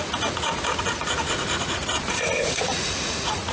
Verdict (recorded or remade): remade